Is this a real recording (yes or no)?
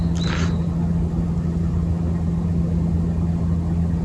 yes